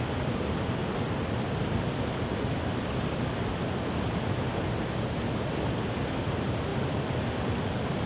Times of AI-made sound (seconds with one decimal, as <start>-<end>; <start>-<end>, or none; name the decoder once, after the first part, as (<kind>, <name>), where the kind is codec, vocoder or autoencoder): none